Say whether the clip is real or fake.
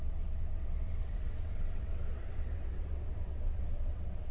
fake